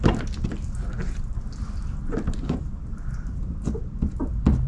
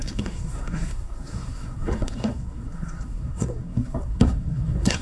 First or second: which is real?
first